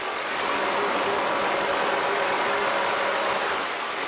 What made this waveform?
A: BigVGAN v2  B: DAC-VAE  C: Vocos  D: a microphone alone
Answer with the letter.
D